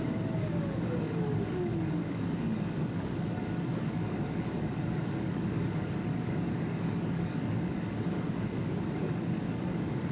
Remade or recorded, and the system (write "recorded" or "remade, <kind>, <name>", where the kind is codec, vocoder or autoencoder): remade, codec, DAC